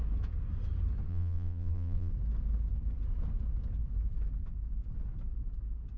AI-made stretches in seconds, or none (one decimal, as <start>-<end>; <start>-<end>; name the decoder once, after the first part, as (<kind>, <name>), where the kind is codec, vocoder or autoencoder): 1.1-2.1 (vocoder, BigVGAN v2)